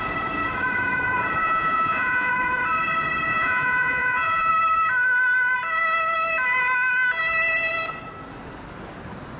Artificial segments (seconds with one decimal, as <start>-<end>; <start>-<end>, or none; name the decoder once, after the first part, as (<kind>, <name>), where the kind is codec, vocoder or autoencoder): 1.4-2.3 (vocoder, Vocos); 3.3-4.5

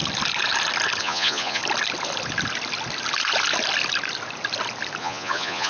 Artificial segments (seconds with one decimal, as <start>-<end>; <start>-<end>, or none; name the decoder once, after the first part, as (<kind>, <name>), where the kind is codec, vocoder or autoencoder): 1.0-1.6 (vocoder, Vocos); 5.0-5.7

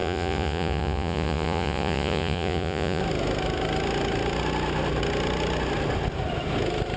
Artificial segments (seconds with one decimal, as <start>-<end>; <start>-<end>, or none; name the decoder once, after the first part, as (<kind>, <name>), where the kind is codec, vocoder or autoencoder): 0.0-3.0 (vocoder, Vocos)

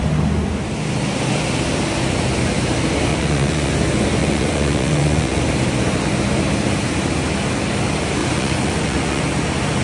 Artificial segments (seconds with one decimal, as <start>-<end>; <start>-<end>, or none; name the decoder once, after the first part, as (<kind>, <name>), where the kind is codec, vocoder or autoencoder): 3.1-3.7 (vocoder, Vocos); 4.2-5.4; 8.2-9.2

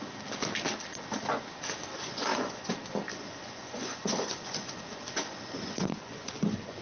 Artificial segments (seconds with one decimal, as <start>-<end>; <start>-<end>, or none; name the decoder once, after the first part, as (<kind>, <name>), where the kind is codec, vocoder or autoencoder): 1.9-2.7 (vocoder, Vocos); 3.1-6.8

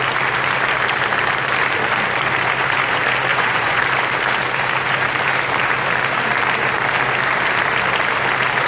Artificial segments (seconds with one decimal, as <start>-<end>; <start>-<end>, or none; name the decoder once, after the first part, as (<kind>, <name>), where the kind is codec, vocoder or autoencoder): 3.3-3.8 (vocoder, Vocos)

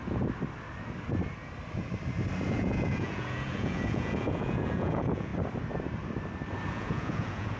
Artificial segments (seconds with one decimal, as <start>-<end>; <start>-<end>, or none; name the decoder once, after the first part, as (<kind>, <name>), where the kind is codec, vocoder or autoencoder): 2.5-5.3 (vocoder, Vocos); 6.7-7.6